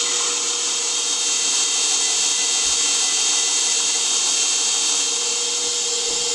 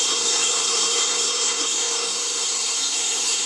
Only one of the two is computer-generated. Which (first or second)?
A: second